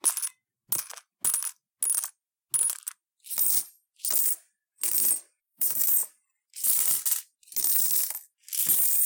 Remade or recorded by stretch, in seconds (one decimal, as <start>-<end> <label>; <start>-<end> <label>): 0.0-5.4 recorded; 5.4-6.1 remade; 6.1-9.1 recorded